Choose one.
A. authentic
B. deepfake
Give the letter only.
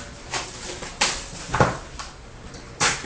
B